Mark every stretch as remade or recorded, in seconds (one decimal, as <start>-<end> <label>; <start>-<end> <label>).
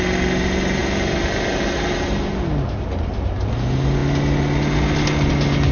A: 0.0-5.7 recorded